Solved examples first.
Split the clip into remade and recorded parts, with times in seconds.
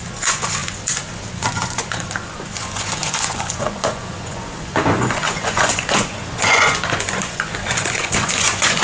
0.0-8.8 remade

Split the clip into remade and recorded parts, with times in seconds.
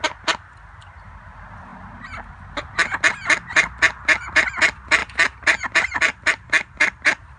0.0-5.0 recorded; 5.0-7.4 remade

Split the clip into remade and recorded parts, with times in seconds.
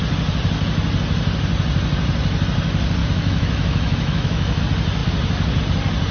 0.0-3.0 recorded; 3.0-4.6 remade; 4.6-6.1 recorded